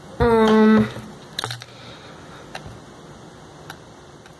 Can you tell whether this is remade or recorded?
recorded